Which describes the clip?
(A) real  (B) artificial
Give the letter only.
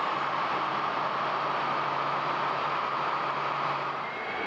A